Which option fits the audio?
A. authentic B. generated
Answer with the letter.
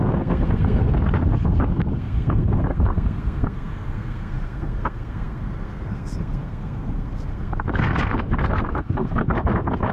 B